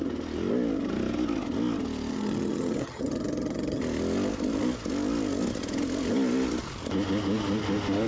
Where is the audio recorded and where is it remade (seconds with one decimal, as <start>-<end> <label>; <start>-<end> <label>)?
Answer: 0.0-2.1 recorded; 2.1-3.8 remade; 3.8-8.1 recorded